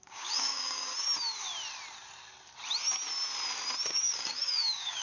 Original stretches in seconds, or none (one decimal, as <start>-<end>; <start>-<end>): 0.9-3.9